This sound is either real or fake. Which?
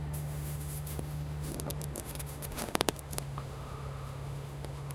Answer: fake